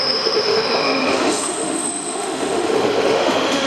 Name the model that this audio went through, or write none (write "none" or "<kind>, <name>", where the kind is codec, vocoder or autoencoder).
autoencoder, DAC-VAE